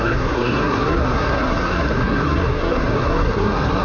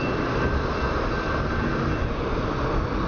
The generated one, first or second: first